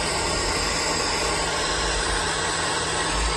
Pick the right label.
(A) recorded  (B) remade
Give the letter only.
A